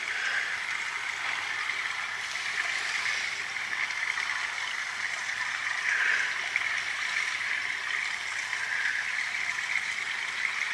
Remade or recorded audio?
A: remade